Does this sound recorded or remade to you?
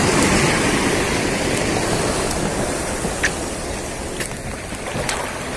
recorded